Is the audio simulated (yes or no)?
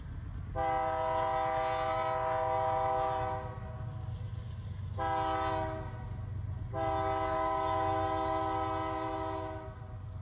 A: no